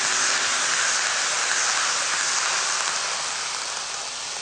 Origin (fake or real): fake